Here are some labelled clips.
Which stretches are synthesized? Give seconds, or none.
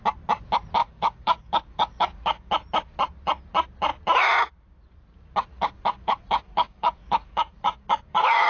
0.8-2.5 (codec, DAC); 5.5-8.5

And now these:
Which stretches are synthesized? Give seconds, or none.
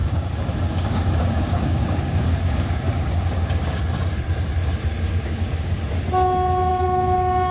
0.0-3.8 (codec, DAC); 4.9-5.8; 6.7-7.5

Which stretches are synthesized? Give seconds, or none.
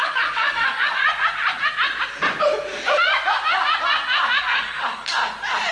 0.0-1.0 (codec, DAC); 4.4-5.2